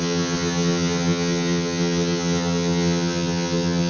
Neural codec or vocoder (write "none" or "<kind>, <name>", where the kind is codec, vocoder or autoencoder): vocoder, HiFi-GAN